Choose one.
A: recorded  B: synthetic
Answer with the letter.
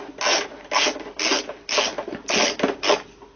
A